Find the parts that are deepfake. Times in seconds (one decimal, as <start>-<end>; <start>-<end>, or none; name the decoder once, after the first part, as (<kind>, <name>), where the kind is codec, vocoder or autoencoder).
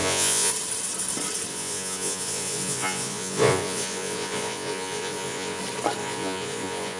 0.0-0.5 (vocoder, Vocos); 1.5-5.6; 6.0-7.0